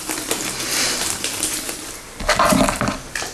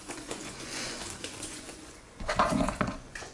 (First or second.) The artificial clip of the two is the second